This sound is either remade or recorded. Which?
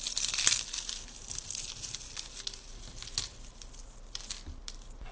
recorded